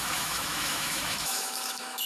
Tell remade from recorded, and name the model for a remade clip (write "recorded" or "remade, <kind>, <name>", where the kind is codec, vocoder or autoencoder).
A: remade, autoencoder, DAC-VAE